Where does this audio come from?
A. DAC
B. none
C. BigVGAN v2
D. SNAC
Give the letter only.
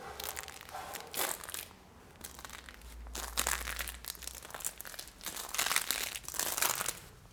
B